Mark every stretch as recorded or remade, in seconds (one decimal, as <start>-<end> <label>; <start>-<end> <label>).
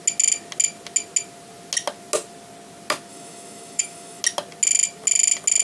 0.0-3.1 recorded; 3.1-4.2 remade; 4.2-5.6 recorded